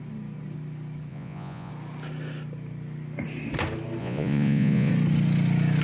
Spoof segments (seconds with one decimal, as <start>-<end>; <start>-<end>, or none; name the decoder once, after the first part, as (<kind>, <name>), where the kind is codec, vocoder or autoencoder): 1.1-1.7 (vocoder, Vocos); 4.0-4.9

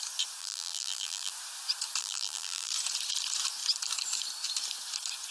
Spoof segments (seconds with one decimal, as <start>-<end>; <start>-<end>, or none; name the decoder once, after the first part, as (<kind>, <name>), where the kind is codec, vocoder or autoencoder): 0.4-1.3 (vocoder, BigVGAN v2); 2.0-2.7

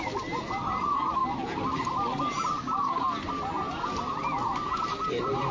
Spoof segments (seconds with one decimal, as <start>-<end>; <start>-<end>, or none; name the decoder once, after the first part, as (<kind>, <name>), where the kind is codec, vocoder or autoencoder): none

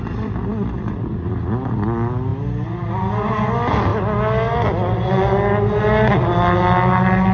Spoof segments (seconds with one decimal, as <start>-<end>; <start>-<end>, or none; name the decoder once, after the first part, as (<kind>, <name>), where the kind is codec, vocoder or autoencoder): none

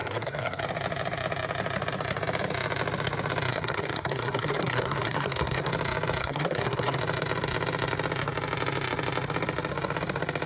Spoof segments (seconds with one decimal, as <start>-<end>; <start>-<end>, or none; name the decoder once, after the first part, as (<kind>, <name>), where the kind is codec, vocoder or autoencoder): 0.0-0.6 (codec, SNAC); 3.5-5.7; 6.2-7.0

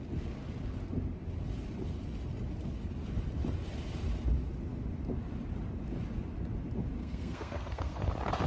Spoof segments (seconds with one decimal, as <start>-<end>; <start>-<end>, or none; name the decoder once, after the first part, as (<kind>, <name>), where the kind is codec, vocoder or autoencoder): 7.0-8.1 (codec, SNAC)

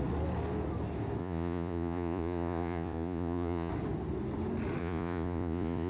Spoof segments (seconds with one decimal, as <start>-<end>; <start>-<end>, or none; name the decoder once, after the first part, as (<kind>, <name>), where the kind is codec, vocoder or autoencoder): 1.2-3.7 (vocoder, Vocos); 4.8-5.9